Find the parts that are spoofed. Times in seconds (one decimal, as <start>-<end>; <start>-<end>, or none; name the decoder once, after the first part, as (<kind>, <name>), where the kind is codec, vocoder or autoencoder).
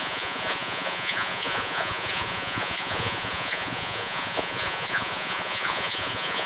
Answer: 0.0-6.5 (vocoder, Vocos)